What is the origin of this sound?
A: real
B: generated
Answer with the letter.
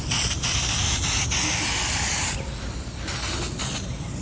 A